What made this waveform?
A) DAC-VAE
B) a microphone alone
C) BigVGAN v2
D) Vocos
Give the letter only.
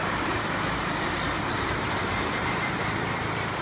C